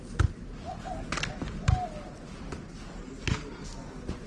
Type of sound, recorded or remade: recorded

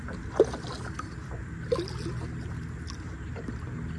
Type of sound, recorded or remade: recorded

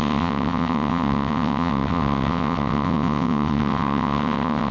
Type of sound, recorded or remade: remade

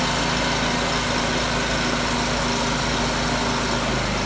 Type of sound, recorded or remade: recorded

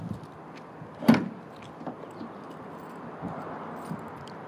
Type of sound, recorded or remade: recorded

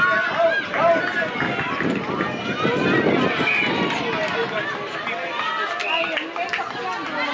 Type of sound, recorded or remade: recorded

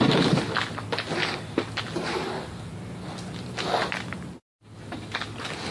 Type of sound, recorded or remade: recorded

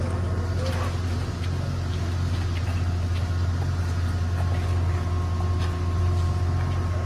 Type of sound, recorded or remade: recorded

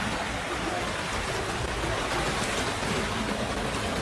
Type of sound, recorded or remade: recorded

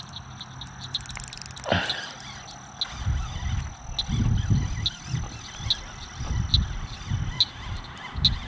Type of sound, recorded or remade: recorded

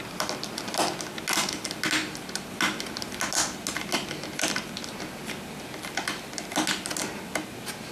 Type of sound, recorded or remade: recorded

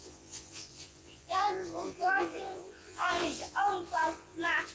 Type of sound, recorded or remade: remade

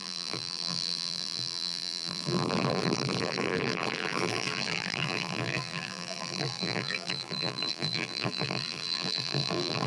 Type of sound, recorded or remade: remade